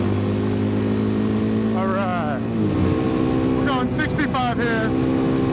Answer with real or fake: real